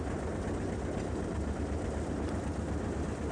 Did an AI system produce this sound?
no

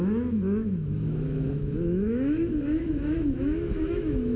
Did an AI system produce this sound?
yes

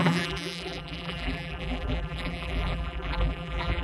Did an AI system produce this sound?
yes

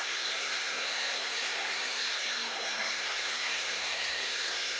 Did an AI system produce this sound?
yes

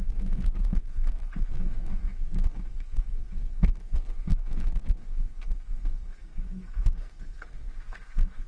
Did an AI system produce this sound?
yes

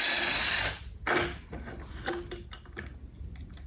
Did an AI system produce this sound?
no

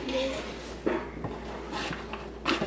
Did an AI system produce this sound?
no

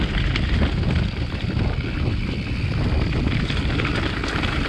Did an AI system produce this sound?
no